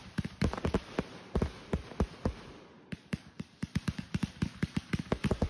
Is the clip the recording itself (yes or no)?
no